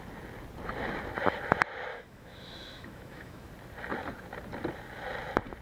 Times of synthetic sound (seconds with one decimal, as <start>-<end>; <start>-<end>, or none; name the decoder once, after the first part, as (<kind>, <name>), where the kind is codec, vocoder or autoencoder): 1.9-3.5 (autoencoder, DAC-VAE)